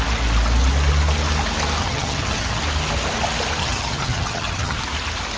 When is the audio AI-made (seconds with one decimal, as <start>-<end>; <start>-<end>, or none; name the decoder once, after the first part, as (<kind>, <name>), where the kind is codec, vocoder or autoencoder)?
1.8-2.6 (vocoder, HiFi-GAN); 3.6-4.8